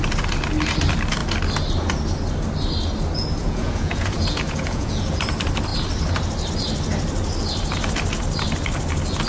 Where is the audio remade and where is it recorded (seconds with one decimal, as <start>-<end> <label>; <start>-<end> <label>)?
0.0-3.4 recorded; 3.4-5.2 remade; 5.2-9.3 recorded